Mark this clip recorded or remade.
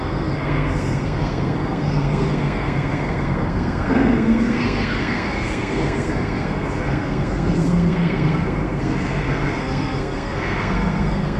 remade